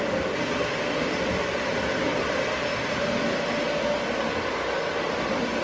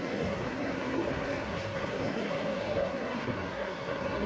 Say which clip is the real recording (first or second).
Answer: first